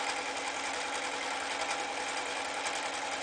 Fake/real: real